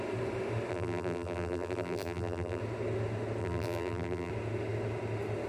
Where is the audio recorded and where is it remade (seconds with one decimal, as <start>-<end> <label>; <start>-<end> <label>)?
0.0-0.7 recorded; 0.7-2.6 remade; 2.6-3.4 recorded; 3.4-4.3 remade; 4.3-5.5 recorded